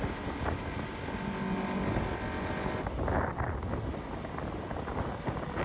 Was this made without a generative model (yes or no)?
yes